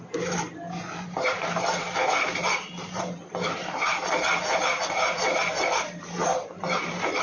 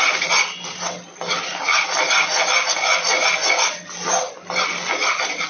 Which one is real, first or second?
second